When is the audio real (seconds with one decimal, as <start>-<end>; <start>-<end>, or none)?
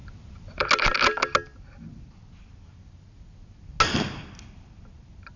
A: 0.6-5.4